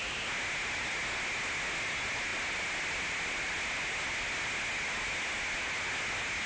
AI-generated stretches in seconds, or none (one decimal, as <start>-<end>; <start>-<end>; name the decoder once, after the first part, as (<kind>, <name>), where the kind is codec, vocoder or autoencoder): none